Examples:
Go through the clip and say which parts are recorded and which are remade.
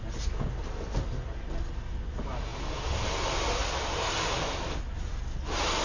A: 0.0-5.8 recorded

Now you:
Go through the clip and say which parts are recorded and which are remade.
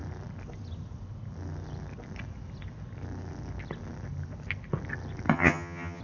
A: 0.0-5.3 recorded; 5.3-6.0 remade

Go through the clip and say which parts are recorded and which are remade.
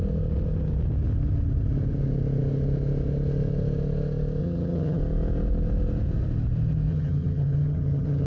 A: 0.0-4.4 recorded; 4.4-5.0 remade; 5.0-6.9 recorded; 6.9-8.3 remade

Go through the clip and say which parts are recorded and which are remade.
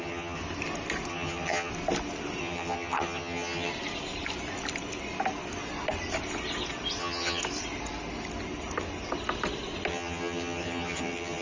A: 0.0-0.4 remade; 0.4-1.1 recorded; 1.1-1.7 remade; 1.7-2.4 recorded; 2.4-3.7 remade; 3.7-7.0 recorded; 7.0-7.4 remade; 7.4-9.9 recorded; 9.9-11.4 remade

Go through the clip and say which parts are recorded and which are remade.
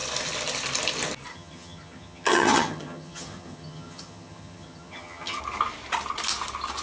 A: 0.0-1.3 recorded; 1.3-5.4 remade; 5.4-6.8 recorded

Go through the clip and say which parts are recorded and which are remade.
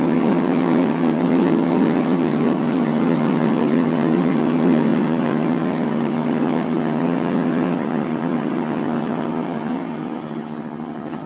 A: 0.0-11.3 remade